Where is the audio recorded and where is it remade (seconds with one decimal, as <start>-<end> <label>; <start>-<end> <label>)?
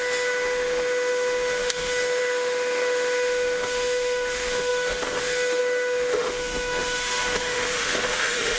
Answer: 0.0-8.6 remade